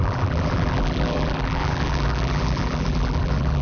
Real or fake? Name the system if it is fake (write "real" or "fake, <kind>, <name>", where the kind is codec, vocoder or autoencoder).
fake, vocoder, BigVGAN v2